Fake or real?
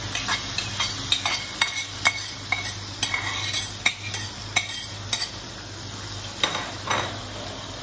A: real